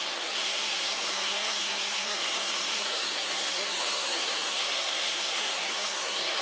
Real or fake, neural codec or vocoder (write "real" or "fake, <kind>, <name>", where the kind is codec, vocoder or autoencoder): fake, codec, SNAC